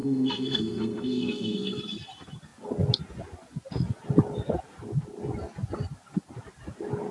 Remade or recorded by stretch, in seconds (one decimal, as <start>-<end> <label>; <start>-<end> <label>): 0.0-1.8 remade; 1.8-7.1 recorded